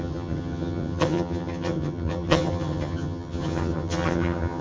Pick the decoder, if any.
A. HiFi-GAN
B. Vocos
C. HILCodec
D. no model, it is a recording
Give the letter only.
A